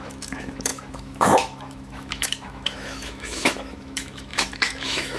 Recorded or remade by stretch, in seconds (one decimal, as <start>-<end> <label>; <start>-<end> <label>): 0.0-5.2 remade